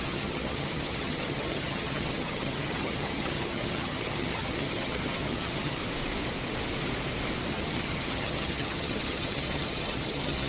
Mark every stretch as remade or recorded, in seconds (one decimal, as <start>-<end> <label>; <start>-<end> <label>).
0.0-5.8 remade; 5.8-7.5 recorded; 7.5-10.5 remade